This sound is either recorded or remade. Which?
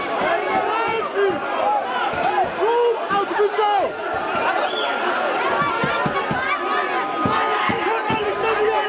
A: recorded